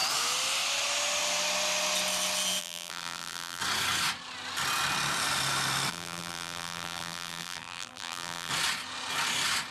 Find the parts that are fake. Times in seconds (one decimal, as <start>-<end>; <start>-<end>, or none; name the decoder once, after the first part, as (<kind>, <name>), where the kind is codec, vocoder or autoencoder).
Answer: 2.6-3.6 (vocoder, BigVGAN v2); 5.9-8.5